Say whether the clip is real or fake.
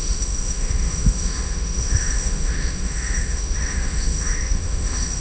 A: fake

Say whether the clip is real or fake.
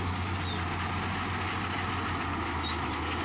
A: real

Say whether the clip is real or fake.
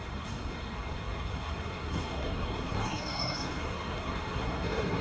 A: fake